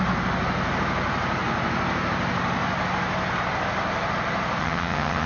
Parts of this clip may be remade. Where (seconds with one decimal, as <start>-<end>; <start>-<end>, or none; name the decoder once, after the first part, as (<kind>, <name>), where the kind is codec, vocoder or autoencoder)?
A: 4.6-5.3 (vocoder, HiFi-GAN)